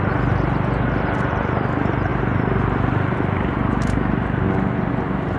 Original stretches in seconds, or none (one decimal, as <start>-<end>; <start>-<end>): 0.0-5.4

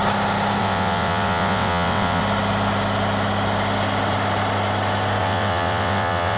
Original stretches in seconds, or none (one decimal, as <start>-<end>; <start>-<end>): 0.0-0.6; 2.2-5.2

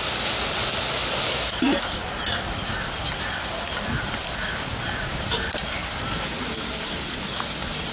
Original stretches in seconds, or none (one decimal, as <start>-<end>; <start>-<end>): 0.0-7.9